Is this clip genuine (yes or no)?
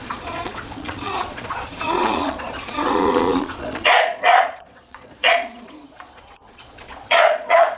no